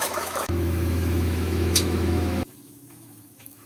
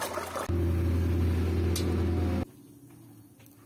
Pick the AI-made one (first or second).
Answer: first